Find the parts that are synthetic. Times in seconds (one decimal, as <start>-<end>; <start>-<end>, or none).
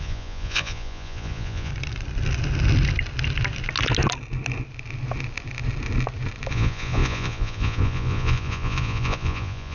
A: 0.0-1.7; 6.5-9.7